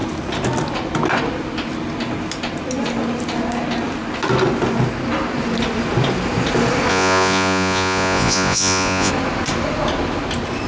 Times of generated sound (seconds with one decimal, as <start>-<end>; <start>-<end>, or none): 6.9-9.1